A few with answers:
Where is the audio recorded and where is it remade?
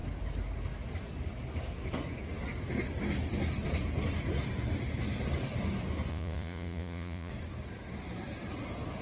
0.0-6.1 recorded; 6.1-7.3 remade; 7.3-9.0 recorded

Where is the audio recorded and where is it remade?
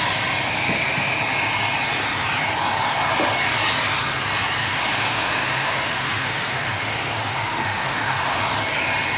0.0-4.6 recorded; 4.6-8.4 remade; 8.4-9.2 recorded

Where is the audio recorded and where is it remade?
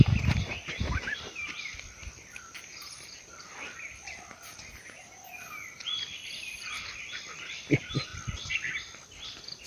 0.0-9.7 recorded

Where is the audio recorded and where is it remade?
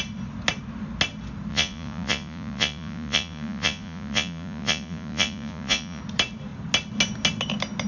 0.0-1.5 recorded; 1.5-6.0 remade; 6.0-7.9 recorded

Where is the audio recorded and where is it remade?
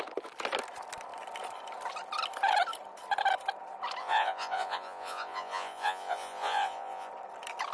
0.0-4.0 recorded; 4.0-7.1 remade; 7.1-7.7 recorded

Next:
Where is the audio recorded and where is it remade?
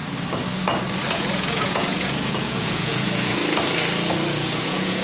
0.0-1.1 recorded; 1.1-3.4 remade; 3.4-4.6 recorded; 4.6-5.0 remade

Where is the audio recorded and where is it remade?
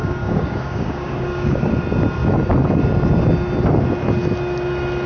0.0-1.7 remade; 1.7-5.1 recorded